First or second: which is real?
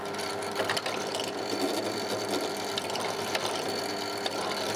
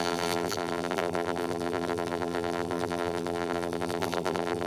first